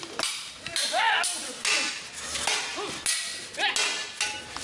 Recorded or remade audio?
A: recorded